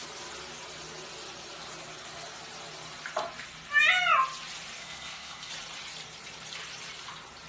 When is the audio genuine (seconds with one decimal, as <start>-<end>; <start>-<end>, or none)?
0.0-4.8; 5.5-7.5